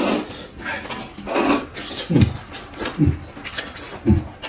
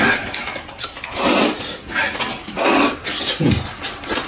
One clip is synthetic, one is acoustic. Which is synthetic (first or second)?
second